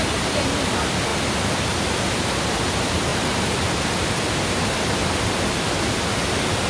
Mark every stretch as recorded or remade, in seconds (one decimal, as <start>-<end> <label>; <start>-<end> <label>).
0.0-3.1 recorded; 3.1-4.9 remade; 4.9-6.7 recorded